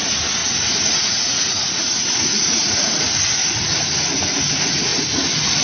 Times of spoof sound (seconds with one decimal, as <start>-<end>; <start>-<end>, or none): 0.4-3.0